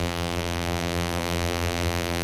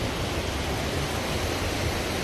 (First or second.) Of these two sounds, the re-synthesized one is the first